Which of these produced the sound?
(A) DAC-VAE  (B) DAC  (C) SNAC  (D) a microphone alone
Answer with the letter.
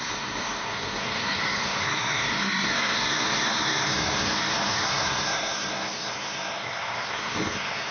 C